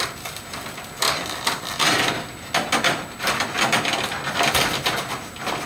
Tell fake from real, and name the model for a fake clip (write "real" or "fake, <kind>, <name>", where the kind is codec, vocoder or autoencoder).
real